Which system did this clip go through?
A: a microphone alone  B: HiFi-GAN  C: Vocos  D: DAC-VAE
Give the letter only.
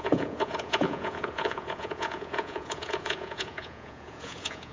C